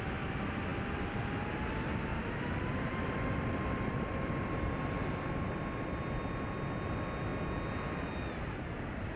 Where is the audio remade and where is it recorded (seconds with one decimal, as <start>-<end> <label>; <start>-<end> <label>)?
0.0-2.1 recorded; 2.1-6.2 remade; 6.2-9.2 recorded